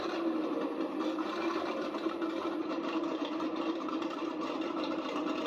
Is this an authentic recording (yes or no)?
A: yes